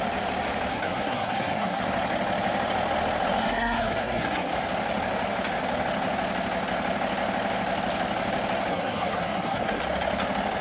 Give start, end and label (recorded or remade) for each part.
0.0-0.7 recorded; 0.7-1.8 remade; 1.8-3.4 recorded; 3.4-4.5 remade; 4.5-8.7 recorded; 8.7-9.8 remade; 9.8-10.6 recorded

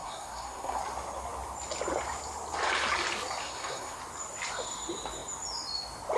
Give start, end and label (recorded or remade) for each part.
0.0-0.8 remade; 0.8-3.4 recorded; 3.4-4.0 remade; 4.0-6.2 recorded

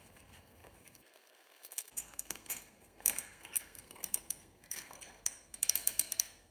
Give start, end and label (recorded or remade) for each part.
0.0-6.5 remade

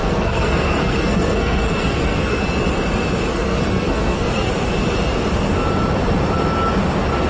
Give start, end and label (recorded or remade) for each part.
0.0-2.4 remade; 2.4-3.3 recorded; 3.3-4.5 remade; 4.5-7.3 recorded